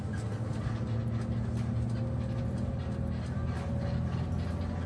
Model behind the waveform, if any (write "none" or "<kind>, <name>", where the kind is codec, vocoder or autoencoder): none